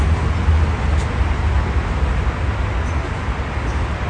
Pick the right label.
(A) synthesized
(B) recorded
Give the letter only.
B